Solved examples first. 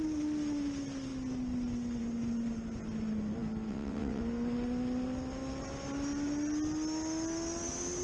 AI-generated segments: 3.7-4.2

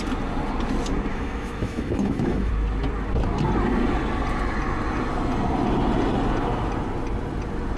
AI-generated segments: 1.1-2.5